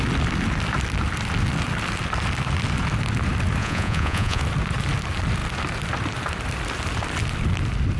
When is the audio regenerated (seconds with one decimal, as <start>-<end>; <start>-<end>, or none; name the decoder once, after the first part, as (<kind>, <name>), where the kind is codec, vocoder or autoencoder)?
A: 3.6-4.4 (vocoder, Vocos)